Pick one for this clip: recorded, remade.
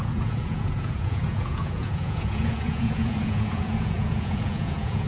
remade